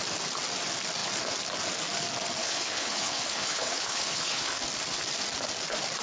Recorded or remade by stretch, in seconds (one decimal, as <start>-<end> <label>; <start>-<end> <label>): 0.0-2.4 recorded; 2.4-4.6 remade; 4.6-6.0 recorded

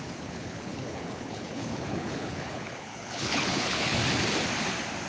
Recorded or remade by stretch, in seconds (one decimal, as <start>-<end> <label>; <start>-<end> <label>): 0.0-4.0 remade; 4.0-5.1 recorded

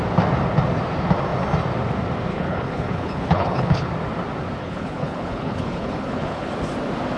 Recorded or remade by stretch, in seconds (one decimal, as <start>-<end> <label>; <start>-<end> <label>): 0.0-2.3 recorded; 2.3-3.9 remade; 3.9-4.6 recorded; 4.6-6.5 remade; 6.5-7.2 recorded

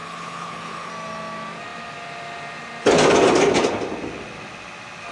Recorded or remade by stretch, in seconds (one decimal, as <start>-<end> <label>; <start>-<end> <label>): 0.0-0.9 remade; 0.9-5.1 recorded

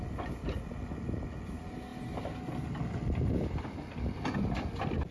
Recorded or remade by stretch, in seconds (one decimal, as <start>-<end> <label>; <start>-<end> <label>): 0.0-5.1 recorded

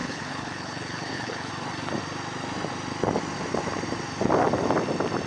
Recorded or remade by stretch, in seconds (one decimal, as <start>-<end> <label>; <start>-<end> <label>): 0.0-1.5 remade; 1.5-5.3 recorded

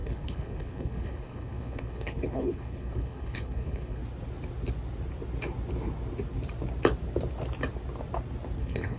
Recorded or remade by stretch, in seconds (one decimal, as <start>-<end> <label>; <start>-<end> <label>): 0.0-4.0 remade; 4.0-8.6 recorded; 8.6-9.0 remade

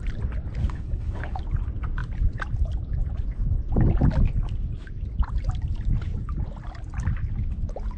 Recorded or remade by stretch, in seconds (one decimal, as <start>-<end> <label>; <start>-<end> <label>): 0.0-0.6 recorded; 0.6-1.4 remade; 1.4-8.0 recorded